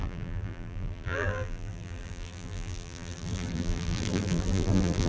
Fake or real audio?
fake